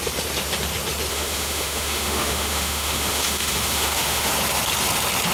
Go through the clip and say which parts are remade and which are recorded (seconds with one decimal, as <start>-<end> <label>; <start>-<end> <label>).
0.0-1.1 recorded; 1.1-4.3 remade; 4.3-5.3 recorded